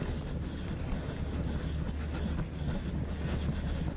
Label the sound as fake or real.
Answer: real